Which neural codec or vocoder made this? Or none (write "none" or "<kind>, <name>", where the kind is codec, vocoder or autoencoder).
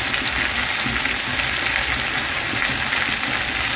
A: none